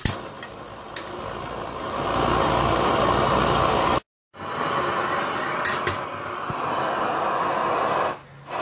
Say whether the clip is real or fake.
real